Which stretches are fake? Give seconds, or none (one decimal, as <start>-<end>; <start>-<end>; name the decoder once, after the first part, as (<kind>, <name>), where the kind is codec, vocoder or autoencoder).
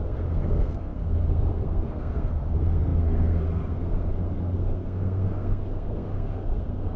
0.0-7.0 (codec, SNAC)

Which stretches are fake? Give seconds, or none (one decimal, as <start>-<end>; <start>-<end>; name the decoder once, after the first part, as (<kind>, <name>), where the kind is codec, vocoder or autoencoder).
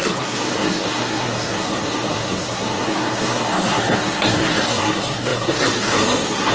0.0-6.5 (codec, SNAC)